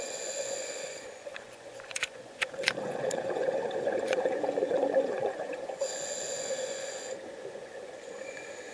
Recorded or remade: remade